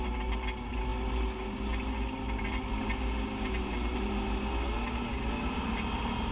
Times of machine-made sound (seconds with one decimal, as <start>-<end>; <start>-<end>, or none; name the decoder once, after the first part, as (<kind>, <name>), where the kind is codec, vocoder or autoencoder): none